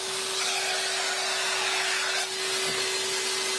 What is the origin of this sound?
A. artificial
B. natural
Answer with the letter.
B